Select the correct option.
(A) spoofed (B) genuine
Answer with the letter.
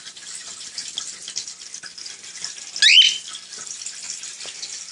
B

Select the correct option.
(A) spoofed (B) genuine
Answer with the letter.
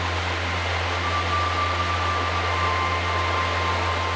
B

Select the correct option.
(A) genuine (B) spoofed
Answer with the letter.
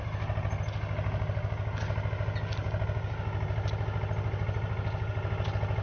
A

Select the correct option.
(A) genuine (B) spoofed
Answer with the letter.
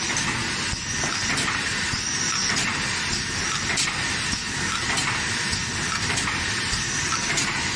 A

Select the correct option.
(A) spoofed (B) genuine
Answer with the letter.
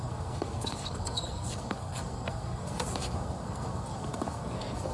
A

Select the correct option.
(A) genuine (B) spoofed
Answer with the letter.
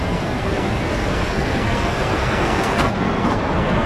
B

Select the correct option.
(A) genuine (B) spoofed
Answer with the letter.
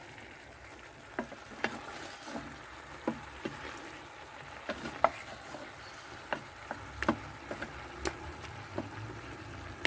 A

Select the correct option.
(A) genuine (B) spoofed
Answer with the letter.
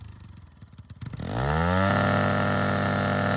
A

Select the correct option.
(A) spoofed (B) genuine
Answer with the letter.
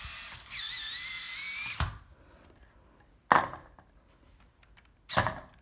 B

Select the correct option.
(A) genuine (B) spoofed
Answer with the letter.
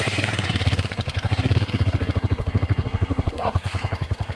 B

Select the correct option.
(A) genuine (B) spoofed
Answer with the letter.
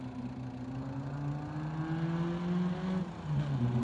A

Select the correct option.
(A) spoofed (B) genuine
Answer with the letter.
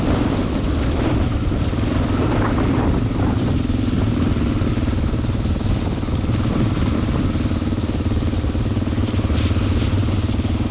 B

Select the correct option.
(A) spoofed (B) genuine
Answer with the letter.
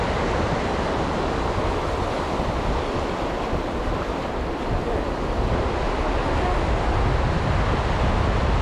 B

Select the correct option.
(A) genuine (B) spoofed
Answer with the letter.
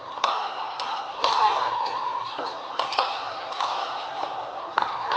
B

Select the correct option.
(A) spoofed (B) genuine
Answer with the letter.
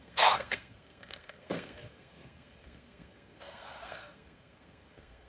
A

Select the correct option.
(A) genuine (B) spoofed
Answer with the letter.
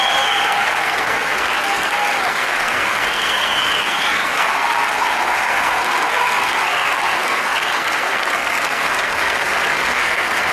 B